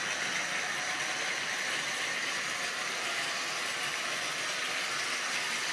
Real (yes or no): yes